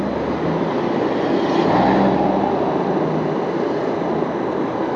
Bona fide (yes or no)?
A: yes